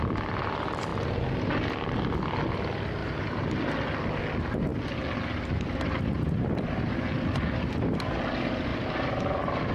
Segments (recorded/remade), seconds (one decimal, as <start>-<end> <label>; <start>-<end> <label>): 0.0-3.0 recorded; 3.0-3.5 remade; 3.5-8.7 recorded; 8.7-9.7 remade